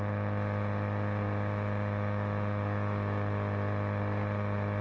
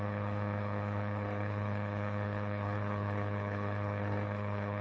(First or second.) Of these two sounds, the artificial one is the second